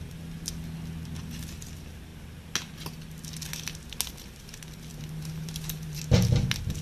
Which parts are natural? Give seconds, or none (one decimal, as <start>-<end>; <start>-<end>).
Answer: 0.0-4.9; 6.0-6.8